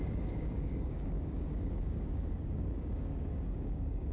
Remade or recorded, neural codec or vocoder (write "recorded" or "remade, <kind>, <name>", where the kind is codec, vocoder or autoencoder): remade, codec, DAC